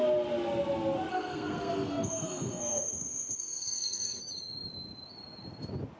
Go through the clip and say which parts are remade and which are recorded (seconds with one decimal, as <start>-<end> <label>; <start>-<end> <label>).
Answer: 0.0-1.1 recorded; 1.1-4.2 remade; 4.2-6.0 recorded